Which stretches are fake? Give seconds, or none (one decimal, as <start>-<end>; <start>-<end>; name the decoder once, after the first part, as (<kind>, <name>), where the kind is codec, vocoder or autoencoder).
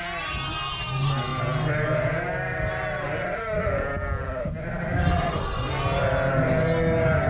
none